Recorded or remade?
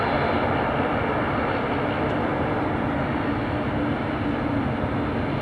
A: recorded